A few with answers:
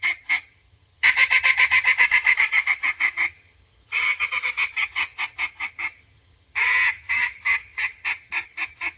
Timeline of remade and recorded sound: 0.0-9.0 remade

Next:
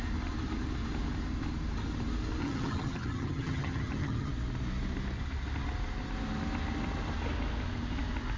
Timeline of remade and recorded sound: 0.0-2.4 recorded; 2.4-4.3 remade; 4.3-8.4 recorded

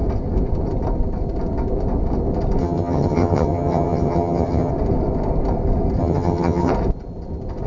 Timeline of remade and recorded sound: 0.0-2.6 recorded; 2.6-4.7 remade; 4.7-6.0 recorded; 6.0-6.7 remade; 6.7-7.7 recorded

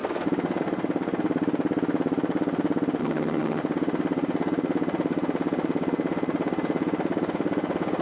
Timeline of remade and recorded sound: 0.0-3.0 recorded; 3.0-3.6 remade; 3.6-8.0 recorded